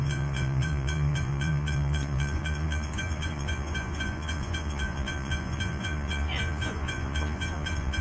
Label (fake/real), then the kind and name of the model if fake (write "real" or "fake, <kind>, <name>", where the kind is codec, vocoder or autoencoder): fake, vocoder, Vocos